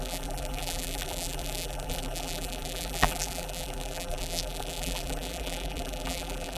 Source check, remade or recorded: remade